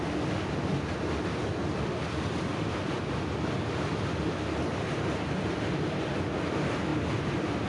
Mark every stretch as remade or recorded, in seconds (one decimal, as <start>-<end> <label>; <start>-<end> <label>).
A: 0.0-7.7 recorded